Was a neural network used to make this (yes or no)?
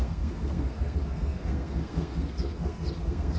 yes